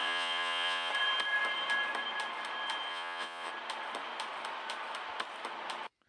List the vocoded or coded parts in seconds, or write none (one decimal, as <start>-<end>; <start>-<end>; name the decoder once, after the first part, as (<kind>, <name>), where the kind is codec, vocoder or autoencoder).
0.0-0.9 (vocoder, Vocos); 2.9-3.5